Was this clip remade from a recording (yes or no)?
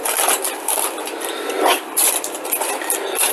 yes